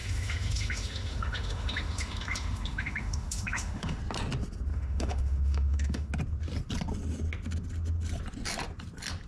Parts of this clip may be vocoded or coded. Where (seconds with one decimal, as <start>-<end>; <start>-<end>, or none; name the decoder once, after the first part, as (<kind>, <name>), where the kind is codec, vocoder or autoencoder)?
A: 0.0-4.0 (autoencoder, DAC-VAE); 4.7-6.1